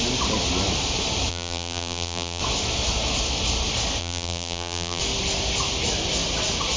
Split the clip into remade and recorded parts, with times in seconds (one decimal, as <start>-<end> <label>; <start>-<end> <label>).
0.0-1.3 recorded; 1.3-2.4 remade; 2.4-4.0 recorded; 4.0-5.0 remade; 5.0-6.8 recorded